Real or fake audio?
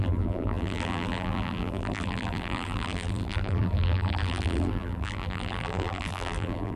fake